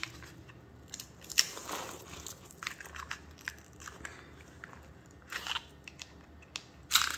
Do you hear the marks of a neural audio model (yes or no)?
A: no